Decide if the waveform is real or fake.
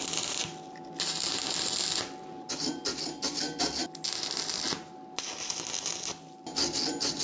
real